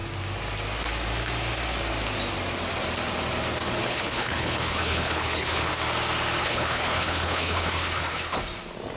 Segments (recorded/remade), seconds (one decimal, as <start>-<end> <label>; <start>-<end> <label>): 0.0-3.8 recorded; 3.8-5.7 remade; 5.7-6.4 recorded; 6.4-8.4 remade; 8.4-9.0 recorded